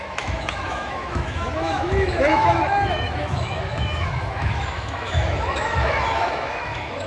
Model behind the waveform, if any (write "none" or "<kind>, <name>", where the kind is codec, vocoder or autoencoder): autoencoder, DAC-VAE